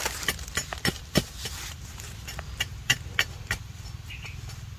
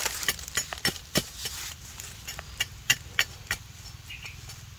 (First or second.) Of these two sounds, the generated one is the second